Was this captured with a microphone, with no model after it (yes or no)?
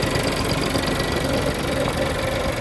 yes